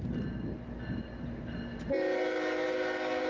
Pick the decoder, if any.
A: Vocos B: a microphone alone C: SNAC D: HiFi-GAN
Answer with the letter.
B